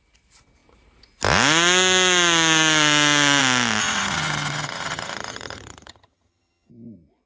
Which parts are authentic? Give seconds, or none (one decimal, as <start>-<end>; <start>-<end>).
0.0-3.8; 6.7-7.3